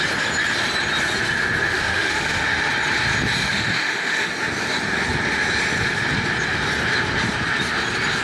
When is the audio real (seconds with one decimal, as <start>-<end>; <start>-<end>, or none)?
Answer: 0.0-1.6; 2.7-3.4; 4.3-8.2